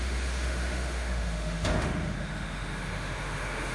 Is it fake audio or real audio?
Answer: fake